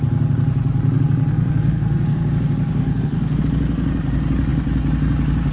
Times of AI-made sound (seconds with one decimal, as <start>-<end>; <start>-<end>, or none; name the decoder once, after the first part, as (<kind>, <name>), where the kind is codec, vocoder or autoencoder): 1.3-2.3 (codec, SNAC); 2.8-3.4